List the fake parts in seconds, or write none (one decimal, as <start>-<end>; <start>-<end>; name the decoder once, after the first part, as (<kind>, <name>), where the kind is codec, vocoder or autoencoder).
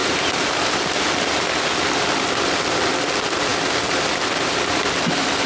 none